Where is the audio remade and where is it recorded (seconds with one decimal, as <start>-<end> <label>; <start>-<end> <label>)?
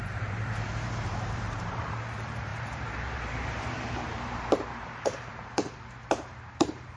0.0-7.0 remade